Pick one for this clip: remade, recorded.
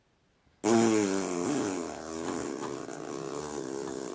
recorded